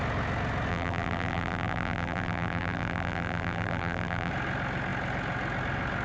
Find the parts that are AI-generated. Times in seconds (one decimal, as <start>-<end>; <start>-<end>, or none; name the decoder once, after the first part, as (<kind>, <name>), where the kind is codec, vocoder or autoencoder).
0.7-4.3 (vocoder, BigVGAN v2)